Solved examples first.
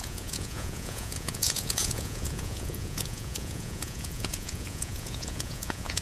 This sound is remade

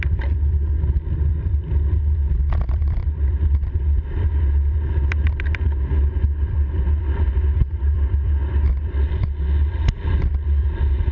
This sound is remade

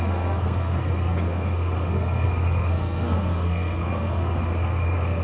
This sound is remade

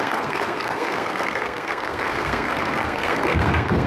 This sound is remade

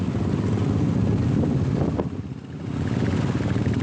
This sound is recorded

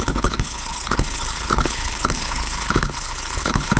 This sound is remade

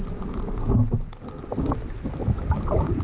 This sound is recorded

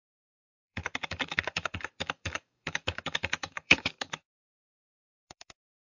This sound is remade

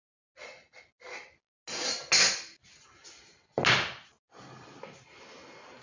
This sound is recorded